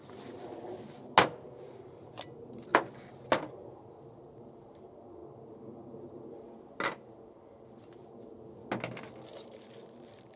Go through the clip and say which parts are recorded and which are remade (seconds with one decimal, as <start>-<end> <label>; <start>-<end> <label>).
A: 0.0-10.4 recorded